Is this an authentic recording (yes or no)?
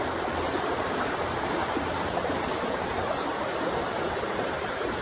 no